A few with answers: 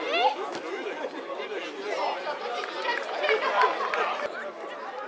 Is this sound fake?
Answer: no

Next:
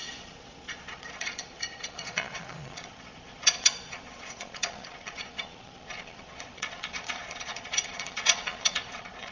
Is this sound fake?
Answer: yes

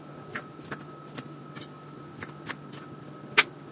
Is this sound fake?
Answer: no